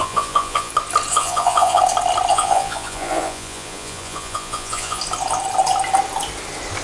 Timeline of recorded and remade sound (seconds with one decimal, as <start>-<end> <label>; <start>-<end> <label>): 0.0-0.7 remade; 0.7-1.1 recorded; 1.1-1.8 remade; 1.8-2.3 recorded; 2.3-5.0 remade; 5.0-6.8 recorded